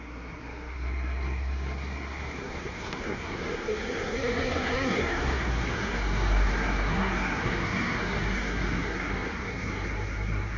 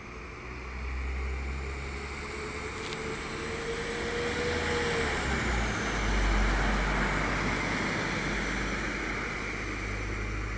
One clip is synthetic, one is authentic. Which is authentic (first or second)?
second